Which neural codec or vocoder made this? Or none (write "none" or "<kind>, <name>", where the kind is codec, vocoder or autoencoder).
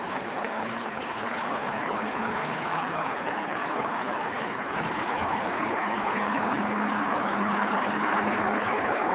codec, HILCodec